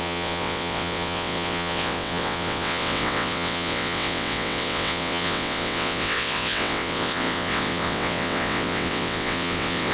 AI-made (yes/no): yes